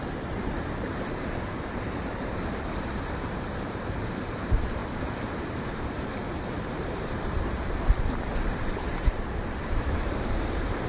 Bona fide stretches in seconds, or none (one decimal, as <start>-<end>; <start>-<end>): 6.2-6.8